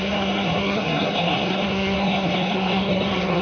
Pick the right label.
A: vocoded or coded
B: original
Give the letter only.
A